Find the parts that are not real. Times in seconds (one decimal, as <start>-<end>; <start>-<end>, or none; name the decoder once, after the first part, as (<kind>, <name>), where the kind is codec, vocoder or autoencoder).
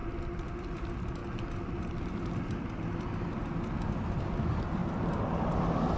0.5-1.2 (vocoder, BigVGAN v2); 3.9-6.0